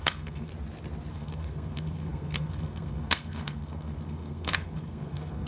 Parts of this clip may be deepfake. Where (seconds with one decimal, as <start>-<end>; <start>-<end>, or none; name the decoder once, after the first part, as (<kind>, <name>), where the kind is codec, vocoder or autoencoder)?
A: 0.0-0.5 (codec, SNAC); 1.1-5.5